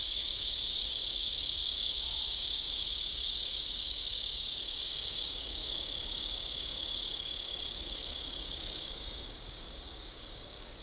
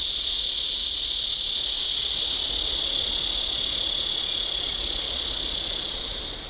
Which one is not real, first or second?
first